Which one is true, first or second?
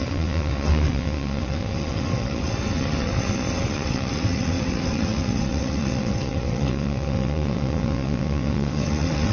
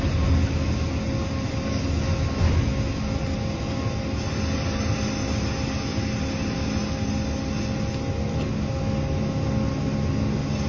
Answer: second